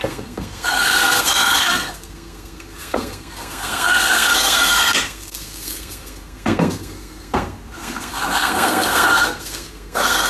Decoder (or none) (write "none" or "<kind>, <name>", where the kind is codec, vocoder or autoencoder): codec, SNAC